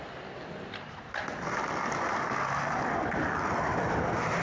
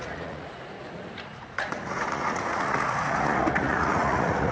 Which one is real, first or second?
first